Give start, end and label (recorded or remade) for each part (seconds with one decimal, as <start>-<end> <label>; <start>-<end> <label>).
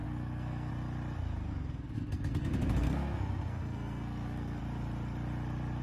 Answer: 0.0-0.7 remade; 0.7-1.5 recorded; 1.5-4.6 remade; 4.6-5.8 recorded